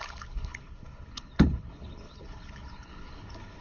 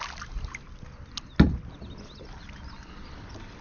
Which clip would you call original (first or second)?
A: second